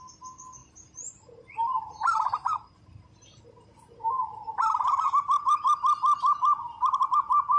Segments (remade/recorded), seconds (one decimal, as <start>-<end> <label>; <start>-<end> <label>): 0.0-0.6 recorded; 0.6-3.0 remade; 3.0-7.6 recorded